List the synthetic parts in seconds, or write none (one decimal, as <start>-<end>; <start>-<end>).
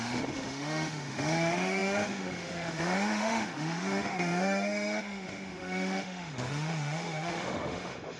0.0-8.2